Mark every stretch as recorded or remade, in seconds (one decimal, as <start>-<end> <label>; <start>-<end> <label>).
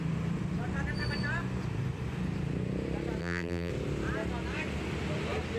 0.0-3.2 recorded; 3.2-3.7 remade; 3.7-5.6 recorded